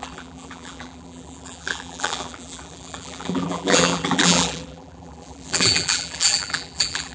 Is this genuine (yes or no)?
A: no